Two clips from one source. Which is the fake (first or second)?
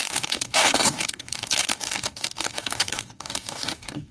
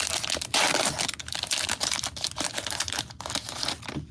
first